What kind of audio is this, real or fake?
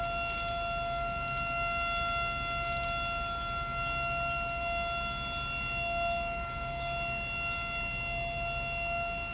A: real